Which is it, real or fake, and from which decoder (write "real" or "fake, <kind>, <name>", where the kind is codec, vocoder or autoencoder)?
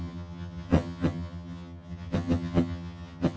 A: fake, vocoder, HiFi-GAN